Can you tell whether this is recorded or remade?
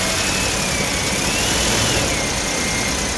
recorded